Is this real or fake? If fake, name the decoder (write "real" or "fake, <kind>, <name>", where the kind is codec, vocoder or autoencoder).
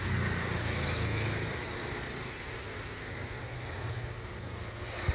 real